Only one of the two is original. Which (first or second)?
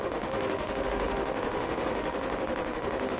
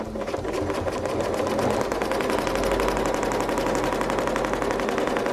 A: second